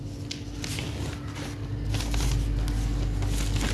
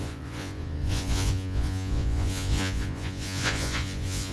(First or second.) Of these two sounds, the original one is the first